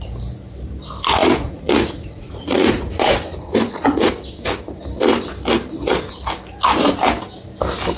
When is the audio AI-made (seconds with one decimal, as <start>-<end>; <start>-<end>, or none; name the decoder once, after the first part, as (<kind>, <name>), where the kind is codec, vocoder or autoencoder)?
1.2-4.1 (vocoder, Vocos)